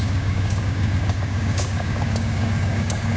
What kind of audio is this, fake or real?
fake